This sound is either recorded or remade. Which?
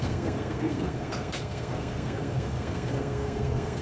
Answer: remade